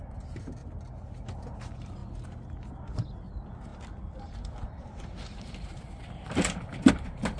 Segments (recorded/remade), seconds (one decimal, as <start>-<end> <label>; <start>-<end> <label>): 0.0-0.6 remade; 0.6-1.4 recorded; 1.4-2.0 remade; 2.0-2.7 recorded; 2.7-7.4 remade